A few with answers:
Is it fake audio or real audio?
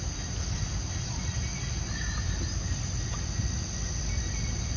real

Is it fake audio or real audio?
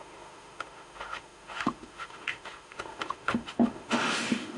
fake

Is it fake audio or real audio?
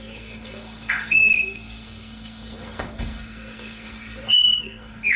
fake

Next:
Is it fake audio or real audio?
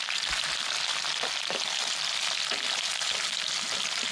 real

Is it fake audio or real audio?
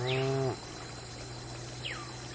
real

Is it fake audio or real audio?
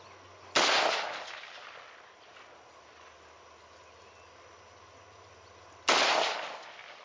real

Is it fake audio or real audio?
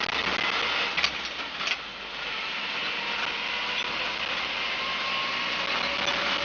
real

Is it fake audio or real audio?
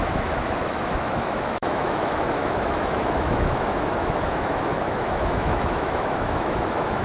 fake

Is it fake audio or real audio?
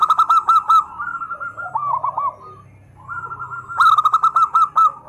real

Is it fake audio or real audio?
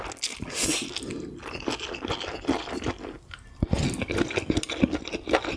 real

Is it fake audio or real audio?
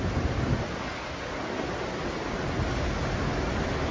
real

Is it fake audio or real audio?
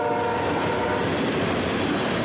real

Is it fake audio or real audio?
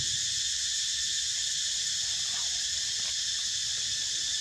real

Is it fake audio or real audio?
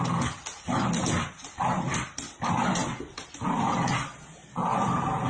real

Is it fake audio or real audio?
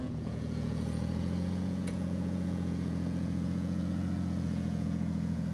fake